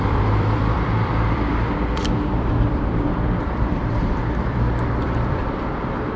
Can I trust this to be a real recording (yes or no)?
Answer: no